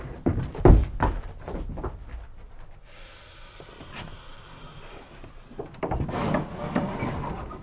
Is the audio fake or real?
real